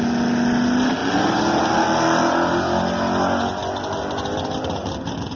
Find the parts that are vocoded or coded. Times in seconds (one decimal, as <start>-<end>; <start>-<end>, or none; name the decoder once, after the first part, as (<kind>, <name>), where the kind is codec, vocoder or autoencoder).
none